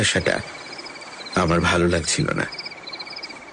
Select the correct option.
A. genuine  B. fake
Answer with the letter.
A